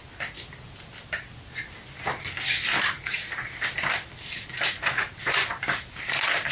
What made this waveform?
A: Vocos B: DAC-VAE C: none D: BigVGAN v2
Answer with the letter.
C